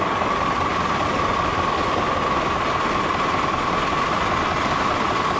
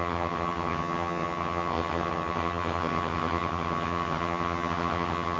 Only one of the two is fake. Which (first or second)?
second